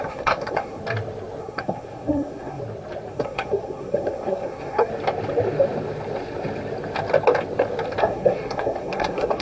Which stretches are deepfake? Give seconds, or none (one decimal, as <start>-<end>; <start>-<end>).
0.0-0.8; 1.4-2.6; 3.1-4.9; 8.0-9.4